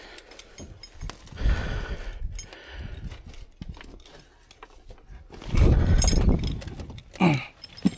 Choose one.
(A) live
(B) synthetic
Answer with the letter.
A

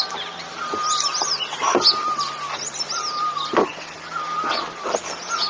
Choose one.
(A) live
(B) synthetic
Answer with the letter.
A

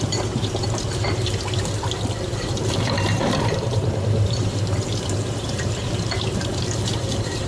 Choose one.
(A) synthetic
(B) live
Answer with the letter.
A